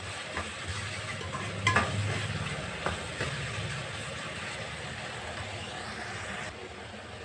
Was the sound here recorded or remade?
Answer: recorded